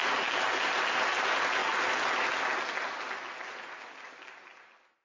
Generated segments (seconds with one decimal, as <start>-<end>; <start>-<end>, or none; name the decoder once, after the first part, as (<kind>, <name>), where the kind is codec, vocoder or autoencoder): none